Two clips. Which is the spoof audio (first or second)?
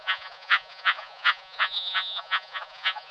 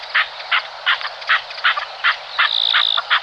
first